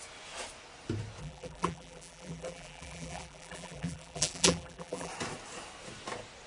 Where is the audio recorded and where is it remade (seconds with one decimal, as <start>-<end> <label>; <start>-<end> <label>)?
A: 0.0-1.2 recorded; 1.2-5.1 remade; 5.1-6.5 recorded

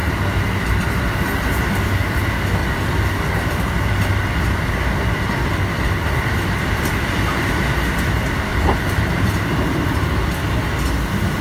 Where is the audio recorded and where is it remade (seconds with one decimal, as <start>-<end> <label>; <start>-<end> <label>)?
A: 0.0-8.5 recorded; 8.5-10.2 remade; 10.2-11.4 recorded

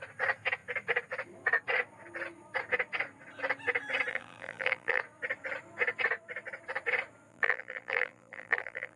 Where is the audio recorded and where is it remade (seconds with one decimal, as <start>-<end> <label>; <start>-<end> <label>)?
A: 0.0-4.1 recorded; 4.1-5.0 remade; 5.0-7.3 recorded; 7.3-9.0 remade

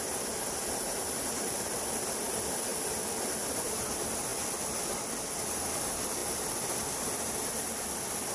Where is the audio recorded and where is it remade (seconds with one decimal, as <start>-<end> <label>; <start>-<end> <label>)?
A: 0.0-4.3 recorded; 4.3-5.3 remade; 5.3-6.2 recorded; 6.2-6.7 remade; 6.7-8.3 recorded

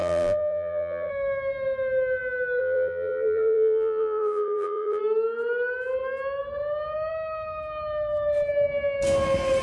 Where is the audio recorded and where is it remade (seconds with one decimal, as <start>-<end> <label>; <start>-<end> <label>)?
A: 0.0-1.1 remade; 1.1-2.6 recorded; 2.6-5.0 remade; 5.0-9.6 recorded